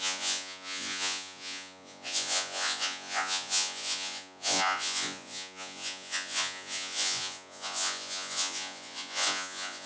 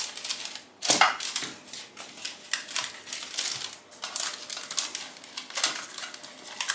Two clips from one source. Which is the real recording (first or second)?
second